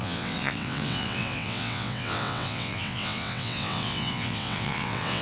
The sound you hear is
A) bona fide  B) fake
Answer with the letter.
B